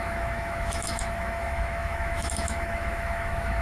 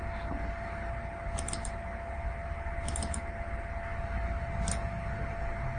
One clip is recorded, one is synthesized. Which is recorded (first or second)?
second